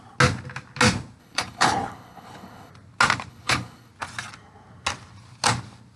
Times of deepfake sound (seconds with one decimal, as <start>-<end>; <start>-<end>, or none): 1.2-2.7; 3.3-3.9